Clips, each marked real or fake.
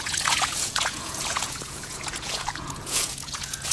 fake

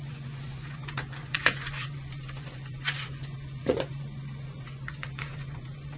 fake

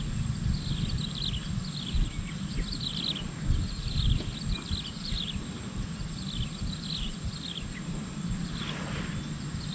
real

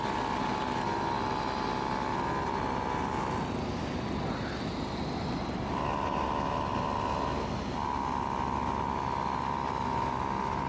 real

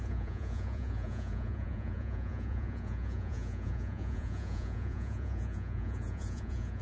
fake